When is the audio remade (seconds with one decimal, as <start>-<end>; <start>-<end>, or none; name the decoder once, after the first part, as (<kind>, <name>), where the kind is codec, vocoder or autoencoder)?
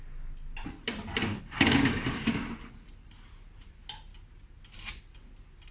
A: 1.3-2.2 (codec, DAC)